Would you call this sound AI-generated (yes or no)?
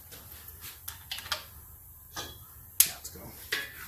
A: no